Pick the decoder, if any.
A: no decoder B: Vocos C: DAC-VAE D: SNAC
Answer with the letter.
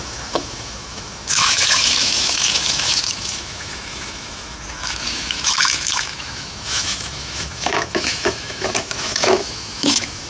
C